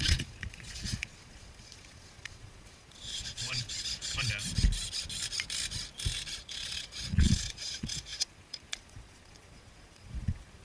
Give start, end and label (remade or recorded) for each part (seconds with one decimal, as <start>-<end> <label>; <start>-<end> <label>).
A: 0.0-4.2 remade; 4.2-6.4 recorded; 6.4-10.6 remade